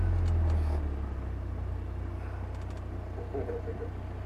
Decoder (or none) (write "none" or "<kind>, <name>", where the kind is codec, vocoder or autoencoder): none